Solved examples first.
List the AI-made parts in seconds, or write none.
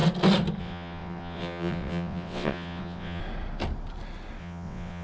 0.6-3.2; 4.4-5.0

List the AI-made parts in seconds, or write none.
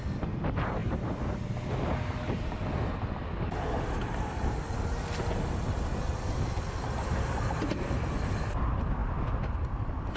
none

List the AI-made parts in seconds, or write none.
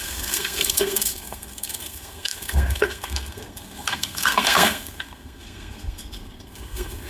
0.0-7.1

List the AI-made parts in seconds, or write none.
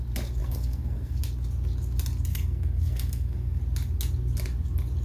0.4-1.2; 2.3-3.6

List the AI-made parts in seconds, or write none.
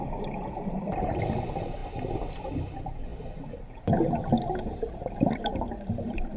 0.0-3.1; 4.4-6.4